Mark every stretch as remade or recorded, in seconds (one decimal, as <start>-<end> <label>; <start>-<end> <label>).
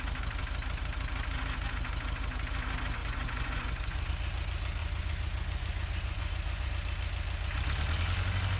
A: 0.0-3.0 recorded; 3.0-4.1 remade; 4.1-4.8 recorded; 4.8-6.7 remade; 6.7-8.6 recorded